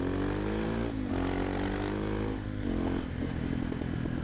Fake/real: real